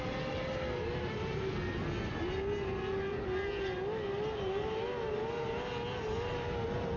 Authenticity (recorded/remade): recorded